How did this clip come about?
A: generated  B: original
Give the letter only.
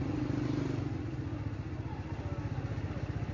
B